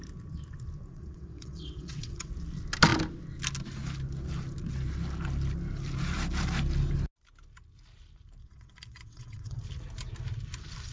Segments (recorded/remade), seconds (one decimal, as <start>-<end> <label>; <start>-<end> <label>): 0.0-0.9 recorded; 0.9-2.3 remade; 2.3-8.4 recorded; 8.4-9.6 remade; 9.6-10.9 recorded